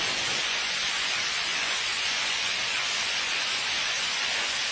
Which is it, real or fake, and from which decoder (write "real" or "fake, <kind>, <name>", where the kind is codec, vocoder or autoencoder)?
fake, vocoder, Vocos